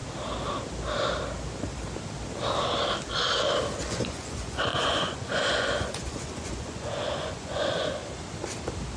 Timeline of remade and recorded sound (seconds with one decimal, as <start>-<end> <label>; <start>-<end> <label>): 0.0-3.8 recorded; 3.8-8.0 remade; 8.0-9.0 recorded